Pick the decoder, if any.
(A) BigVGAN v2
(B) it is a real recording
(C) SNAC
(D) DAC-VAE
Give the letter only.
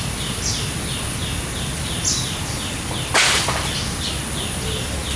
B